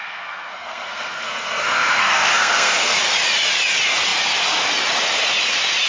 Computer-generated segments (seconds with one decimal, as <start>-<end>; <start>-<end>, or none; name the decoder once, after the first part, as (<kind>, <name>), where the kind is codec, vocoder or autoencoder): 0.0-3.0 (codec, SNAC)